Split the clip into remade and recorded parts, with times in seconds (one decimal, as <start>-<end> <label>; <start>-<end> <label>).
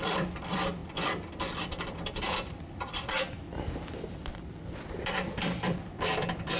0.0-6.6 remade